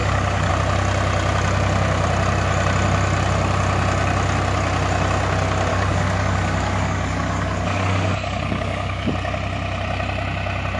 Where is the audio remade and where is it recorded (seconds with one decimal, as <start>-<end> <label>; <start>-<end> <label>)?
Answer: 0.0-0.5 remade; 0.5-5.7 recorded; 5.7-9.1 remade; 9.1-10.8 recorded